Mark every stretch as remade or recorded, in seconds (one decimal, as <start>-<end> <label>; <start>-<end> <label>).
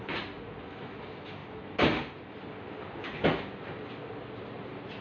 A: 0.0-5.0 recorded